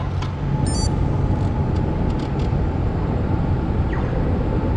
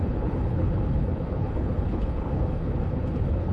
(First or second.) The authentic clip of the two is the first